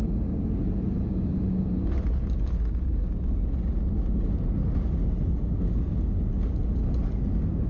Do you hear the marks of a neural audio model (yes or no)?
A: no